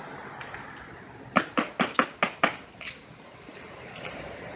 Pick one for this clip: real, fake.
fake